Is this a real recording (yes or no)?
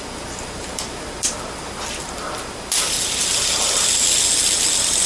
yes